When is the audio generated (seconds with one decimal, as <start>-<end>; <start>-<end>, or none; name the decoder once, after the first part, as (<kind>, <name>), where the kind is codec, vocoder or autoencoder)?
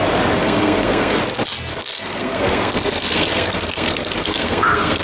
0.4-1.2 (codec, SNAC); 1.7-5.0